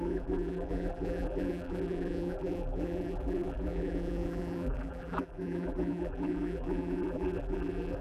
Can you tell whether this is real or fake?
fake